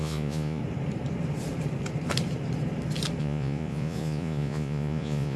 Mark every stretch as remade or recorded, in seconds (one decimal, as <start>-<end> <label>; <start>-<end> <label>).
0.0-0.6 remade; 0.6-3.2 recorded; 3.2-5.4 remade